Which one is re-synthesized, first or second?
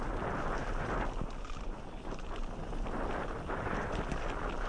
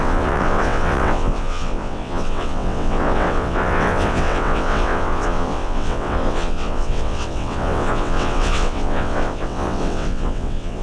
second